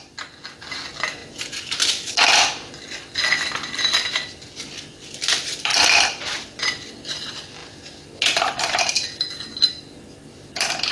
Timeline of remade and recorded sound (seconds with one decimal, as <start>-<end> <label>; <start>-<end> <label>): 0.0-10.9 recorded